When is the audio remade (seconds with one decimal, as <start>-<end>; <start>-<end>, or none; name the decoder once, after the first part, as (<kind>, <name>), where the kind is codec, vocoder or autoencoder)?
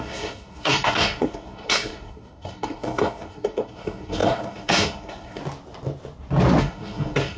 0.0-5.4 (codec, SNAC); 6.6-7.4